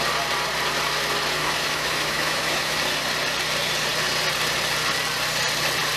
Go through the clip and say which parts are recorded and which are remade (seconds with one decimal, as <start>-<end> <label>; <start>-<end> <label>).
0.0-1.4 recorded; 1.4-2.8 remade; 2.8-6.0 recorded